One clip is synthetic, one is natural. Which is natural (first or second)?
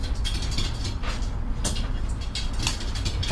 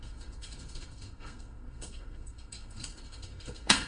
first